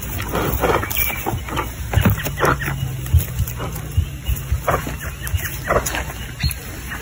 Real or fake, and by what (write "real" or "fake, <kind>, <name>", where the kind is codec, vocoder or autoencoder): real